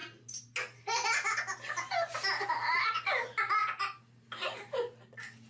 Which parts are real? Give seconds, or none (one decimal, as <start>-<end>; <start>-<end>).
0.0-5.5